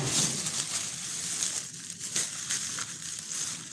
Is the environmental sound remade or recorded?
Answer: recorded